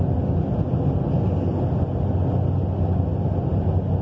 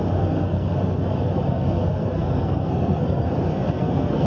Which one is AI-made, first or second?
second